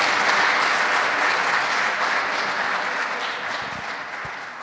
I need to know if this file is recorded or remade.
recorded